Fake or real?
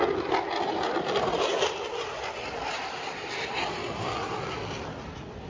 fake